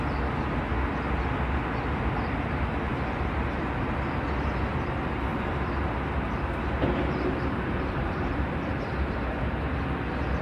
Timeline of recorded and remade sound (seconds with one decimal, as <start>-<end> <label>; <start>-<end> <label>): 0.0-5.3 recorded; 5.3-8.5 remade; 8.5-10.4 recorded